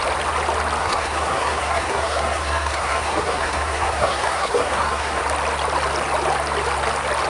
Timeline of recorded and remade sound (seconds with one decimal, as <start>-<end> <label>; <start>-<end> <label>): 0.0-0.8 recorded; 0.8-5.2 remade; 5.2-7.3 recorded